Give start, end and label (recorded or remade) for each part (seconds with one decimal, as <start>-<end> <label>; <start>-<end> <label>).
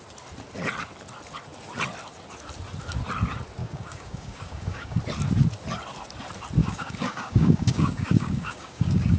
0.0-3.6 recorded; 3.6-5.0 remade; 5.0-6.6 recorded; 6.6-9.2 remade